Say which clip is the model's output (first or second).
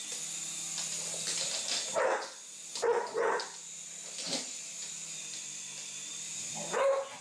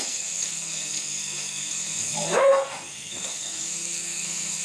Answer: second